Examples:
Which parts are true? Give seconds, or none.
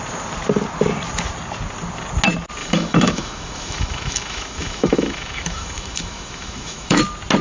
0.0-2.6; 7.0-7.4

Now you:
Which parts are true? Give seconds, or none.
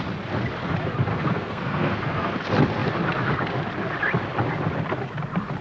0.0-1.1; 2.3-5.6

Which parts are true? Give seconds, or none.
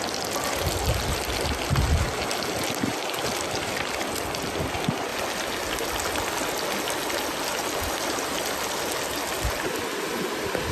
0.0-10.7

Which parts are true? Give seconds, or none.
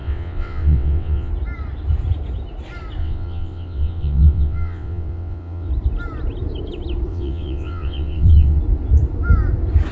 1.3-3.0; 5.7-7.1; 8.6-9.9